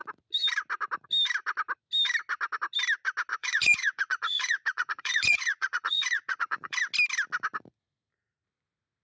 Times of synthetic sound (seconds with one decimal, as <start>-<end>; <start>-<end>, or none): 3.3-6.8